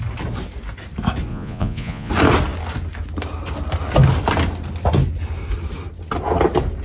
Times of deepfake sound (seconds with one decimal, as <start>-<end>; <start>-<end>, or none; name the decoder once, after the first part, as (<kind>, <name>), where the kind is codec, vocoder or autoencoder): 1.3-2.1 (vocoder, Vocos)

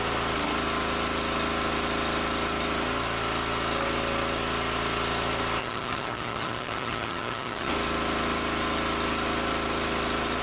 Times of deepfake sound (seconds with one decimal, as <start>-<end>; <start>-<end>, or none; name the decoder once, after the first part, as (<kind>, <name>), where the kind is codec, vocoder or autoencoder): 5.6-7.7 (vocoder, HiFi-GAN)

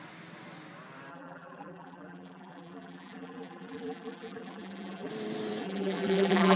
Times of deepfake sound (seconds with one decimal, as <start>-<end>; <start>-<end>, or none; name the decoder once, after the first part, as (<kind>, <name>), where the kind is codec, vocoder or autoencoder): 1.1-5.1 (vocoder, BigVGAN v2); 5.6-6.6

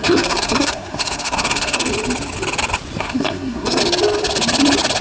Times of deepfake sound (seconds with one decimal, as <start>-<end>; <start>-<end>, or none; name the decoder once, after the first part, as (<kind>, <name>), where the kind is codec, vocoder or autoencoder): 0.0-1.9 (codec, SNAC); 3.0-3.8

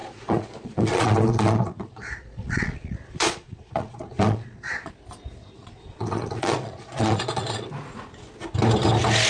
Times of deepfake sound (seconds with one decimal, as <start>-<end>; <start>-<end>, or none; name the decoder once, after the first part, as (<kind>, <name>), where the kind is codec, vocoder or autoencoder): 0.0-4.9 (vocoder, Vocos); 5.4-7.7